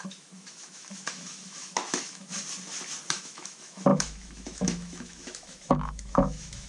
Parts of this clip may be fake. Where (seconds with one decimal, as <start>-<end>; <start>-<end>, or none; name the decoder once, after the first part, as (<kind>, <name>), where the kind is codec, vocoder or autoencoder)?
0.0-2.3 (autoencoder, DAC-VAE); 3.1-6.7